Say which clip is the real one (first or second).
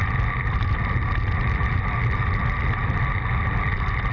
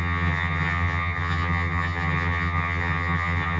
first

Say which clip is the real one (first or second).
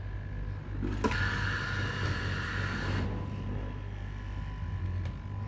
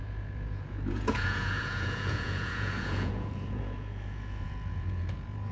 first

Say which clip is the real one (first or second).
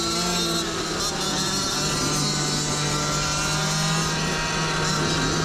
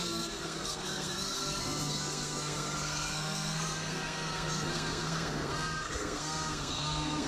first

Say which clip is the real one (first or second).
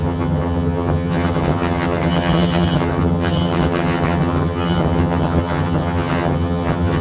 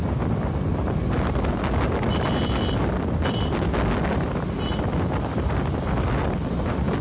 second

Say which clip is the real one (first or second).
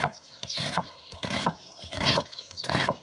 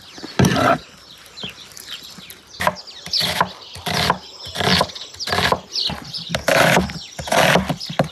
second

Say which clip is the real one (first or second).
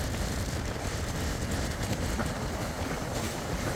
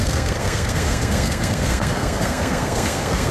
first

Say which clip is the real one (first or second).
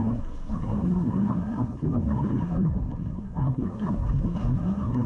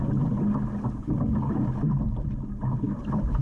second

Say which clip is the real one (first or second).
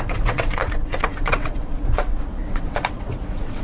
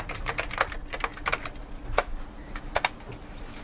second